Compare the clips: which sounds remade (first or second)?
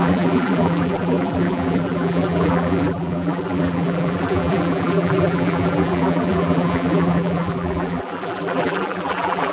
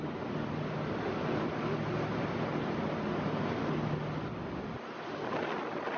first